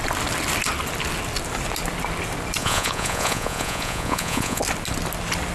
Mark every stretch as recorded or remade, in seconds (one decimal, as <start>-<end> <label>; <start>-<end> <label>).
0.0-2.6 recorded; 2.6-4.6 remade; 4.6-5.5 recorded